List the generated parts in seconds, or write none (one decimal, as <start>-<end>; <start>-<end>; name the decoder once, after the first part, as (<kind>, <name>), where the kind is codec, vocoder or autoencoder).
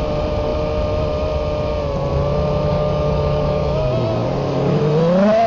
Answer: 2.7-3.8 (codec, DAC); 4.2-4.8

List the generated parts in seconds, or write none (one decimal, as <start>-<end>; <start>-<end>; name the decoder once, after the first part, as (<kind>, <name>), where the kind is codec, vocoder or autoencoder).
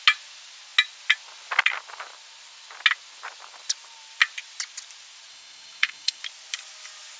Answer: 5.3-6.2 (codec, DAC)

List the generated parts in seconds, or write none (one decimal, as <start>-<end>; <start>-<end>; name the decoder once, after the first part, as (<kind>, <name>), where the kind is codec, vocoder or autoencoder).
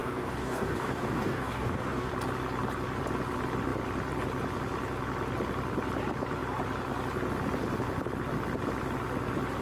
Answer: 0.0-2.1 (codec, DAC)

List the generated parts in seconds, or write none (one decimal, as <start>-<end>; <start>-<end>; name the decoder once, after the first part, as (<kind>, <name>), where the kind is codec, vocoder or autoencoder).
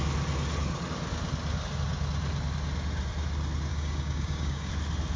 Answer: 3.7-4.7 (codec, DAC)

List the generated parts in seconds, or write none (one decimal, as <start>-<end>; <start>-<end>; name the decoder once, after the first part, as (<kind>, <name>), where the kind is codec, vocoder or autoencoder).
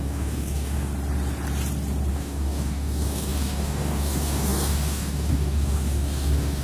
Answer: 0.0-0.9 (codec, DAC); 2.1-6.6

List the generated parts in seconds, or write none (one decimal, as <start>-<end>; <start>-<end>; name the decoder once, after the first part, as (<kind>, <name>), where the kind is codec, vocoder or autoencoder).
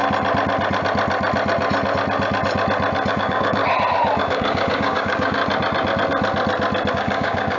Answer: 3.1-3.6 (codec, DAC); 4.2-5.4; 6.9-7.6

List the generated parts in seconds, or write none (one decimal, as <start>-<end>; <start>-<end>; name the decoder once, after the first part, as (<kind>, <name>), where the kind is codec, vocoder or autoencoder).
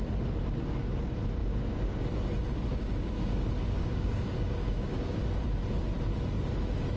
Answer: 1.4-2.1 (codec, DAC); 2.7-5.2